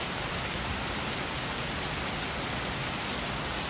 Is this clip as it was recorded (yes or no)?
yes